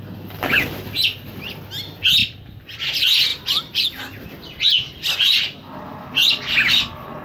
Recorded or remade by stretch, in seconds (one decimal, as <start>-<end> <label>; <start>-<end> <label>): 0.0-2.2 recorded; 2.2-2.8 remade; 2.8-7.2 recorded